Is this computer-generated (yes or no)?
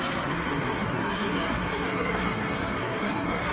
yes